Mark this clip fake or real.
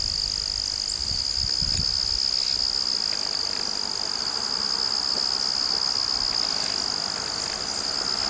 real